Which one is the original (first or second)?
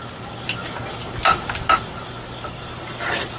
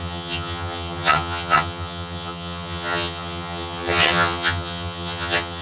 first